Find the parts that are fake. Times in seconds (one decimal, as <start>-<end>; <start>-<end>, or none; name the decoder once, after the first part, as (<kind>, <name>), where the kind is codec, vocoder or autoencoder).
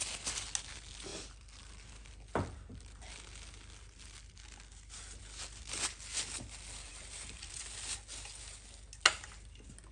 6.9-7.6 (vocoder, BigVGAN v2)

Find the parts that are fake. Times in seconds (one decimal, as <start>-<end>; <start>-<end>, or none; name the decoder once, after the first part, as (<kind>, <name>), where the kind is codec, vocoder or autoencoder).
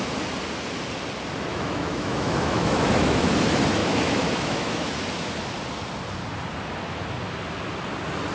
1.5-3.3 (autoencoder, DAC-VAE); 3.8-5.0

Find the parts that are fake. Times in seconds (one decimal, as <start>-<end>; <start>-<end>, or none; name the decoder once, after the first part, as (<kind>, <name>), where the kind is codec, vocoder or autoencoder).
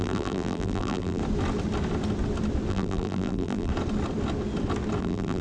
0.0-1.2 (vocoder, BigVGAN v2); 2.7-3.7; 5.0-5.4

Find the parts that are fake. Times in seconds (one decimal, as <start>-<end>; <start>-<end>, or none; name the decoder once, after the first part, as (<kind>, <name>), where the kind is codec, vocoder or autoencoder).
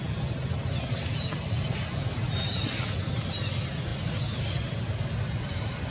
none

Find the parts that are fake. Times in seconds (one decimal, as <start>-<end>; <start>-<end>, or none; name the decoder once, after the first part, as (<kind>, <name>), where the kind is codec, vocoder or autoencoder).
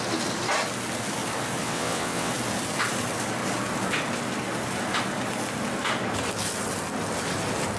1.6-2.3 (vocoder, WaveNeXt)